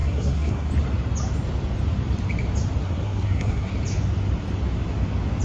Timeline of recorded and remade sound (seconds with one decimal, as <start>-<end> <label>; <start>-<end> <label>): 0.0-0.7 remade; 0.7-2.8 recorded; 2.8-3.7 remade; 3.7-5.4 recorded